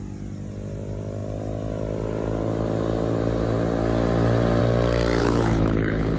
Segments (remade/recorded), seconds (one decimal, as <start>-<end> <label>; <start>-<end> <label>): 0.0-5.2 recorded; 5.2-6.2 remade